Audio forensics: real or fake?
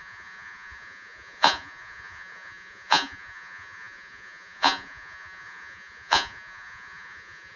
fake